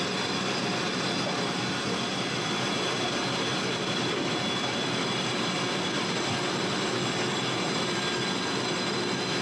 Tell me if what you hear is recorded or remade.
recorded